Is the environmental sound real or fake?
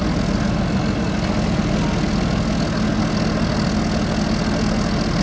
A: real